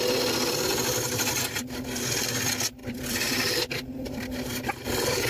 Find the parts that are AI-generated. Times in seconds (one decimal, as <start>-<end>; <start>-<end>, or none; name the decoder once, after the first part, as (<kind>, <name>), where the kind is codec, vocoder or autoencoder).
2.8-5.3 (vocoder, BigVGAN v2)